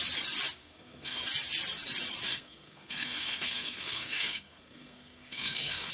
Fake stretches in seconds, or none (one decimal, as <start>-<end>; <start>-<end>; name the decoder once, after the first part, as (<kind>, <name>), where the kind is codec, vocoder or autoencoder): 0.6-1.2 (codec, SNAC); 2.3-5.9